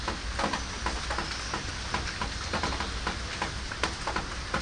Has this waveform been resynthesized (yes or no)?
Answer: no